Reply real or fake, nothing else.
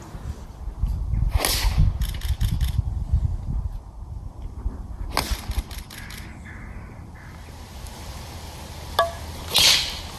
real